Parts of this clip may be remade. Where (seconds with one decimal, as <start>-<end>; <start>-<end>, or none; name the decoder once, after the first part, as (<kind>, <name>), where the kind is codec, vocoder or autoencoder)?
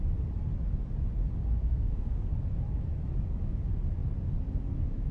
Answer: 1.6-2.4 (codec, SNAC)